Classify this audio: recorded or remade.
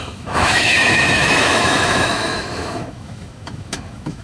remade